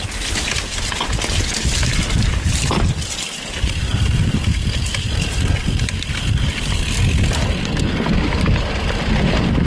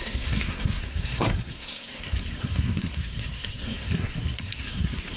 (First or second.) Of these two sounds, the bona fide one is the first